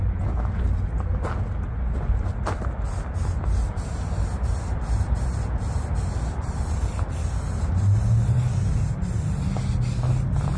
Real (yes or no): yes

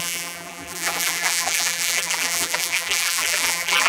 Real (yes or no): no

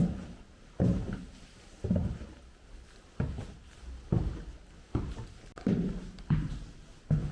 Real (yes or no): yes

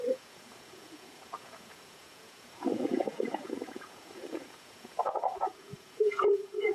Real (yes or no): no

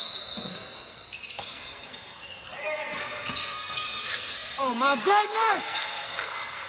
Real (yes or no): no